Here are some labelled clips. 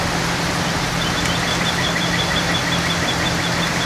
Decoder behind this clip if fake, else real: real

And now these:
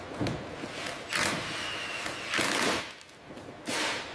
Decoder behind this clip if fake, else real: real